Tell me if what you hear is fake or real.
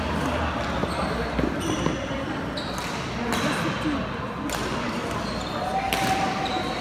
real